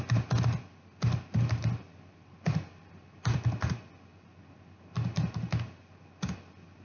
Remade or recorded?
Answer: recorded